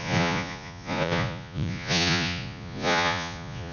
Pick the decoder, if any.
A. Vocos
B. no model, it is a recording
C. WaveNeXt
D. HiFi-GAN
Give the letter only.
A